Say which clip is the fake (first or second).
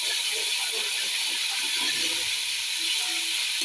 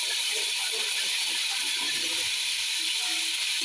second